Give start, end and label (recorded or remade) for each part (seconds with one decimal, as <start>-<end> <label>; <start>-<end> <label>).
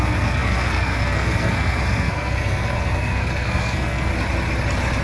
0.0-4.1 remade; 4.1-5.0 recorded